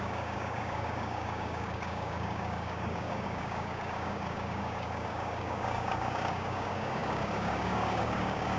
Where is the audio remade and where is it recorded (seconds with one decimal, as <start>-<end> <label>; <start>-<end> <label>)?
0.0-8.6 remade